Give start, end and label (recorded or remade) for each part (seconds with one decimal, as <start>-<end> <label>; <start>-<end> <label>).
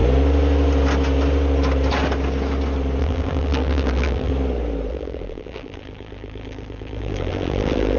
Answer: 0.0-3.0 recorded; 3.0-4.3 remade; 4.3-4.9 recorded; 4.9-8.0 remade